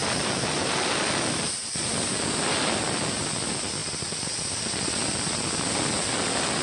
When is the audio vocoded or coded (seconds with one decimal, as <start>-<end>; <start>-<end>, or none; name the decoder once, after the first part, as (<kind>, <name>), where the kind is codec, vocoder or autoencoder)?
none